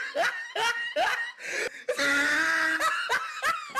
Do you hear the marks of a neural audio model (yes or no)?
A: no